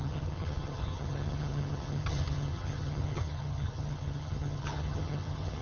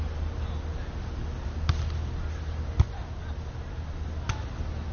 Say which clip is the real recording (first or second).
second